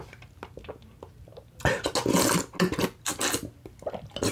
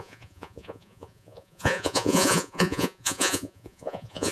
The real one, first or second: first